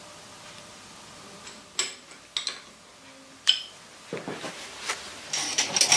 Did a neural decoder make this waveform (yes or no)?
no